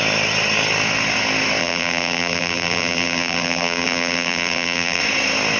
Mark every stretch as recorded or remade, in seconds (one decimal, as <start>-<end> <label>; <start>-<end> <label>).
0.0-1.6 recorded; 1.6-5.0 remade; 5.0-5.6 recorded